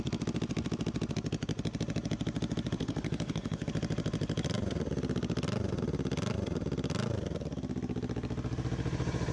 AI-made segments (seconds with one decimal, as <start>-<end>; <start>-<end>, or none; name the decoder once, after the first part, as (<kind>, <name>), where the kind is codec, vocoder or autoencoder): 2.8-3.7 (codec, SNAC)